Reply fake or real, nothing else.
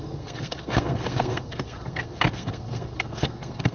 fake